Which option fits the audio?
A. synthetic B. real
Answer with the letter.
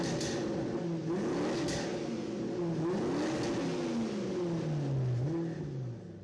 B